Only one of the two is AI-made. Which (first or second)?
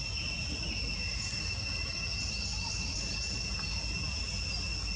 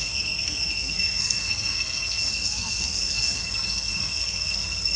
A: second